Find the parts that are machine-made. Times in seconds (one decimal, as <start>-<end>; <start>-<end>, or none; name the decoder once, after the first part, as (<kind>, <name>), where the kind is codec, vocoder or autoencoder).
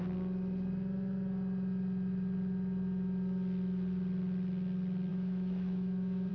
5.1-6.3 (autoencoder, DAC-VAE)